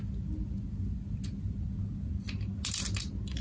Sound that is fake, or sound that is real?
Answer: real